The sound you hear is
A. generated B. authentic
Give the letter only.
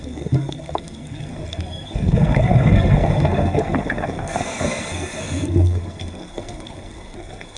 A